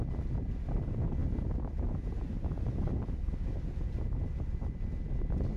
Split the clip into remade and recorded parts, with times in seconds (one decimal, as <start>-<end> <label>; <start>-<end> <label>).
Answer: 0.0-5.6 recorded

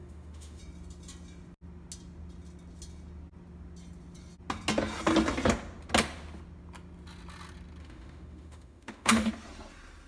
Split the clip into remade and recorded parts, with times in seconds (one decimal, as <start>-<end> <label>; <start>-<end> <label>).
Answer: 0.0-0.6 remade; 0.6-7.8 recorded; 7.8-9.3 remade; 9.3-10.1 recorded

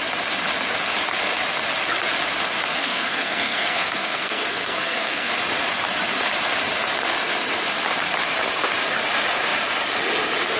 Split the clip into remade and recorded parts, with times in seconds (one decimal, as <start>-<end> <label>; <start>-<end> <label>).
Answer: 0.0-2.8 recorded; 2.8-5.3 remade; 5.3-10.6 recorded

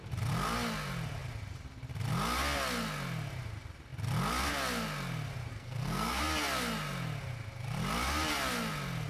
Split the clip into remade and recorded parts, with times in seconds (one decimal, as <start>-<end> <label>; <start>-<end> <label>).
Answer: 0.0-5.5 recorded; 5.5-6.2 remade; 6.2-9.1 recorded

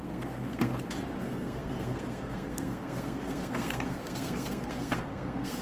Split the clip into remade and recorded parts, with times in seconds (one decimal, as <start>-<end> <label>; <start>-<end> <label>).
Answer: 0.0-0.7 remade; 0.7-1.2 recorded; 1.2-5.6 remade

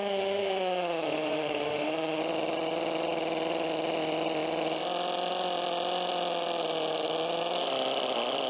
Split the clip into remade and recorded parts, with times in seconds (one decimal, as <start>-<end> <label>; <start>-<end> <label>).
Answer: 0.0-2.2 remade; 2.2-8.5 recorded